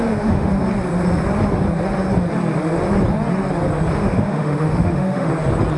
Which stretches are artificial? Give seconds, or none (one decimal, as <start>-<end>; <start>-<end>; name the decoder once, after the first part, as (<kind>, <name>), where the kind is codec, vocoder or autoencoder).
0.0-0.5 (autoencoder, DAC-VAE); 4.0-5.3